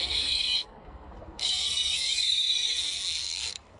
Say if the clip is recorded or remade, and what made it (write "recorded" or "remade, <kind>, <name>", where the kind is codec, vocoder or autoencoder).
remade, codec, SNAC